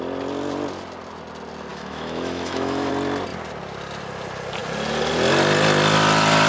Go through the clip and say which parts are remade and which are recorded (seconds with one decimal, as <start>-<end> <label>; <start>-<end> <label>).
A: 0.0-1.7 recorded; 1.7-2.9 remade; 2.9-6.5 recorded